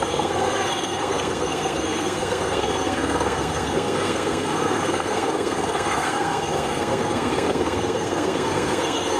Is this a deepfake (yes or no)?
yes